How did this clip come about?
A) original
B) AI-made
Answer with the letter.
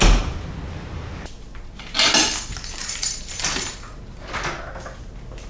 A